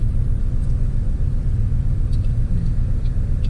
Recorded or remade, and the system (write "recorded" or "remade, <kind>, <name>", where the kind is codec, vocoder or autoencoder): recorded